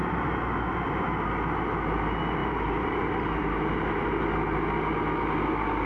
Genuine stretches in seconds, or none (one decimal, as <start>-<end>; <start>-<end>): 0.0-2.4; 4.2-5.9